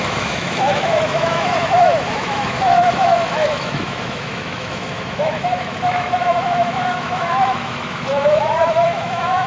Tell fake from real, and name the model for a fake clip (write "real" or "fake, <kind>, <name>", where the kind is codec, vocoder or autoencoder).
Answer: fake, autoencoder, DAC-VAE